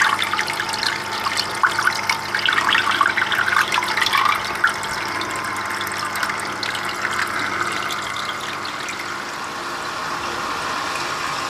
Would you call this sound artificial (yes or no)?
no